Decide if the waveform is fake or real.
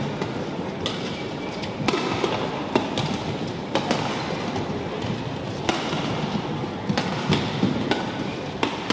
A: real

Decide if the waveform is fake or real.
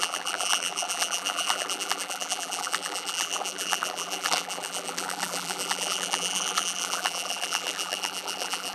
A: fake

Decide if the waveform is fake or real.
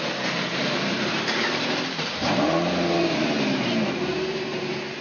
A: fake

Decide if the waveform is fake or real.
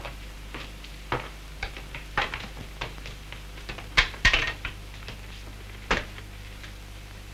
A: fake